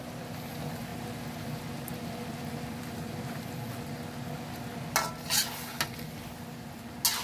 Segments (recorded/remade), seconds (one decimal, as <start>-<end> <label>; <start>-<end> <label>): 0.0-7.2 recorded